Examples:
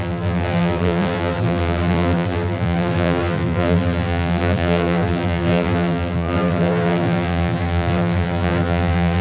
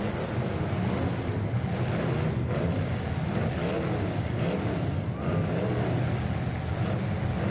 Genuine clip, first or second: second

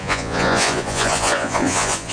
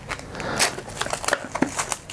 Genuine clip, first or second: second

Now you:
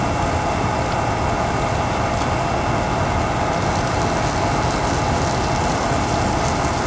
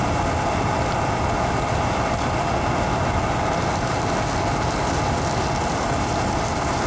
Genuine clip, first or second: first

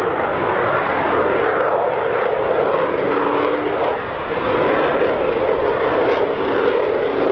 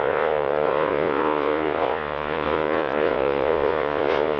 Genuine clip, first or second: first